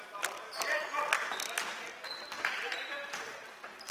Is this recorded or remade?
recorded